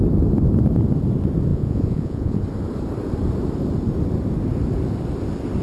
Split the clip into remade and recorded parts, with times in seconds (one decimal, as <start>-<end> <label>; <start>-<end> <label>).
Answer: 0.0-1.5 recorded; 1.5-2.4 remade; 2.4-5.6 recorded